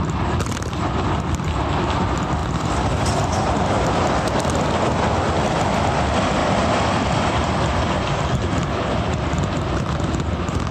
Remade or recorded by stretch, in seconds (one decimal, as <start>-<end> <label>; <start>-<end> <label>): 0.0-6.4 recorded; 6.4-9.3 remade; 9.3-10.7 recorded